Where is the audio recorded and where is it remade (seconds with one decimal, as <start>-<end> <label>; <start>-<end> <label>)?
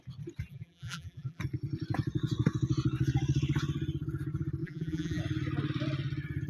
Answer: 0.0-0.5 recorded; 0.5-1.4 remade; 1.4-4.6 recorded; 4.6-5.2 remade; 5.2-6.5 recorded